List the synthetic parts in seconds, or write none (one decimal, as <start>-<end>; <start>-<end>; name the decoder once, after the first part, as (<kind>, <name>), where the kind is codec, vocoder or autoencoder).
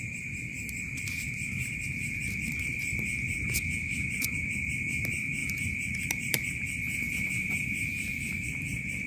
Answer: 0.0-2.9 (vocoder, BigVGAN v2); 4.1-9.1